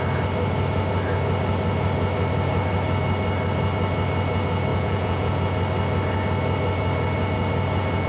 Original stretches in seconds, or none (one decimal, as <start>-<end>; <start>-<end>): 0.0-4.7; 5.4-8.1